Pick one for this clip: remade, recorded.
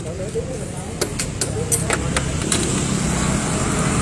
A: recorded